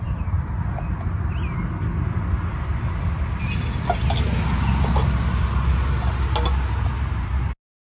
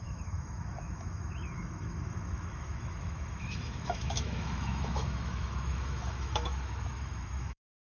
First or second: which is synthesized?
second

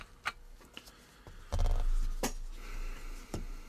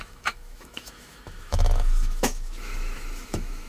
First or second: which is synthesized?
second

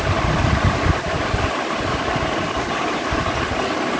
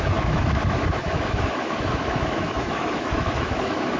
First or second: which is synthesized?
second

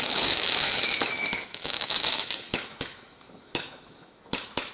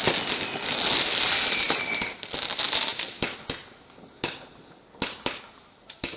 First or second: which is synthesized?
first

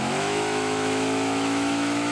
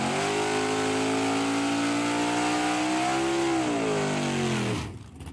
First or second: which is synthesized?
first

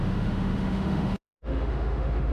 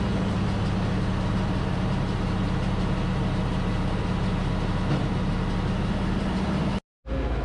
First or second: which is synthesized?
first